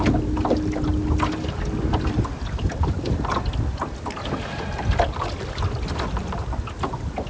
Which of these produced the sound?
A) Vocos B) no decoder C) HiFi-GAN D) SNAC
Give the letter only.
B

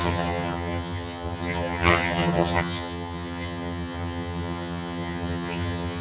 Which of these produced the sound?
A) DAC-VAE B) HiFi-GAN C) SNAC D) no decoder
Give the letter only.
B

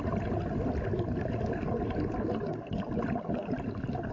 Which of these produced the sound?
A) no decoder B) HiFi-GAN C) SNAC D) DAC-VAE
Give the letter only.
A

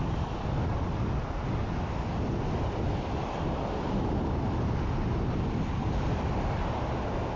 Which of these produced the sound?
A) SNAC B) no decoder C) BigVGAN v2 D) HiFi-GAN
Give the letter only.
B